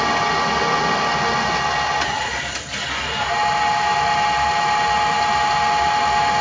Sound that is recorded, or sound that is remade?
recorded